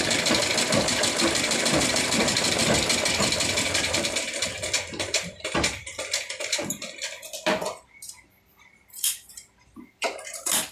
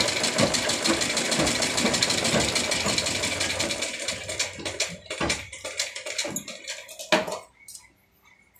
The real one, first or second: second